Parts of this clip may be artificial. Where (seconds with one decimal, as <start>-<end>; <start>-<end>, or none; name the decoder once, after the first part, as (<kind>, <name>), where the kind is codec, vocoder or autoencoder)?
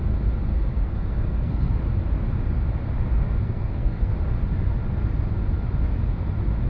0.5-1.7 (codec, SNAC); 3.4-4.1